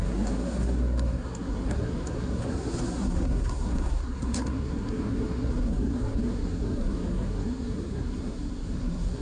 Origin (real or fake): fake